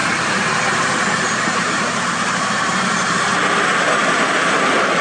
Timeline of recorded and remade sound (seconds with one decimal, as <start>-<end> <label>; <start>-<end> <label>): 0.0-2.9 remade; 2.9-5.0 recorded